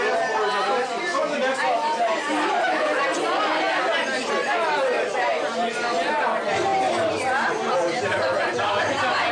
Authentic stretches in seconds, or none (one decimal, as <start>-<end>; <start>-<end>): 0.0-9.3